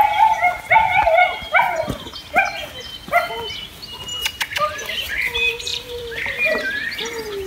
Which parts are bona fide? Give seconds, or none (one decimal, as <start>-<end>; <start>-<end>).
0.0-5.7; 6.7-7.5